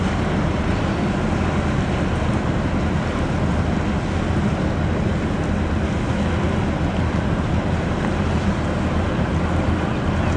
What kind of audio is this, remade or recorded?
recorded